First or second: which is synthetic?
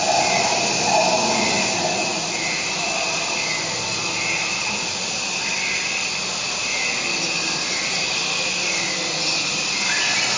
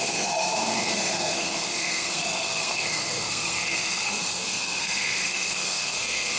second